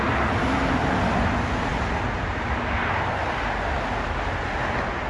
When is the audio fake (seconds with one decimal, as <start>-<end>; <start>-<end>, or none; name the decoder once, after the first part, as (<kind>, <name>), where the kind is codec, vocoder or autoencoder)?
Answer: none